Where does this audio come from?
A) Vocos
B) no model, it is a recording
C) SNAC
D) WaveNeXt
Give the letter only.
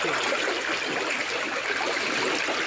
B